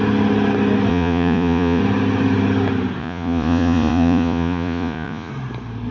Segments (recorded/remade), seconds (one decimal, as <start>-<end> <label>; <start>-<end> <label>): 0.0-0.9 recorded; 0.9-1.8 remade; 1.8-3.0 recorded; 3.0-5.3 remade; 5.3-5.9 recorded